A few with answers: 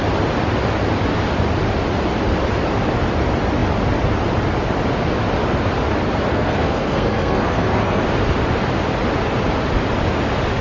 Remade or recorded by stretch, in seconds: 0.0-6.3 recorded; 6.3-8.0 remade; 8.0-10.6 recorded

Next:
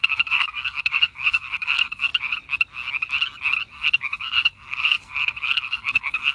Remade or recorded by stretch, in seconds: 0.0-2.1 remade; 2.1-3.7 recorded; 3.7-6.3 remade

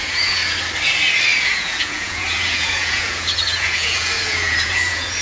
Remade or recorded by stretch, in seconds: 0.0-0.4 remade; 0.4-1.4 recorded; 1.4-5.2 remade

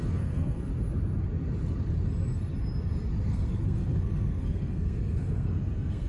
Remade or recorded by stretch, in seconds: 0.0-0.7 remade; 0.7-3.3 recorded; 3.3-6.1 remade

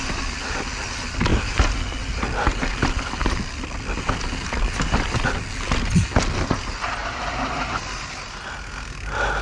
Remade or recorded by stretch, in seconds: 0.0-1.3 recorded; 1.3-5.5 remade; 5.5-7.0 recorded; 7.0-7.8 remade; 7.8-9.4 recorded

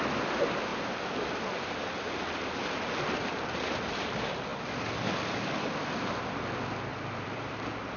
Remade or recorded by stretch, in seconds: 0.0-0.7 recorded; 0.7-1.3 remade; 1.3-4.5 recorded; 4.5-5.6 remade; 5.6-6.9 recorded; 6.9-8.0 remade